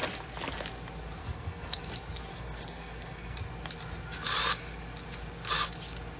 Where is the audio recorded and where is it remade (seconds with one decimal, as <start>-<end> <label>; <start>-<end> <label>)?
0.0-1.2 recorded; 1.2-1.8 remade; 1.8-2.3 recorded; 2.3-3.4 remade; 3.4-6.2 recorded